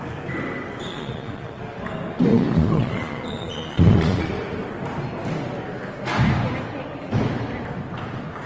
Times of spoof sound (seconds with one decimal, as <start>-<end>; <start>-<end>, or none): 0.9-1.6; 2.3-4.3